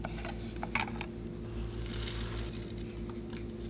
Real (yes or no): yes